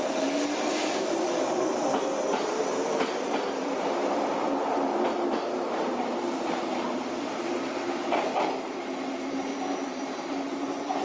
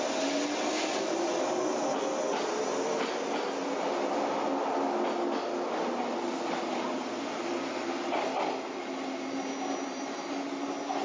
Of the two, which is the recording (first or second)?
second